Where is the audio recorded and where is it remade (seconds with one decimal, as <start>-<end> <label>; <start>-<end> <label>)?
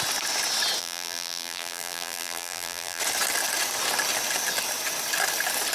0.0-0.8 recorded; 0.8-3.0 remade; 3.0-5.7 recorded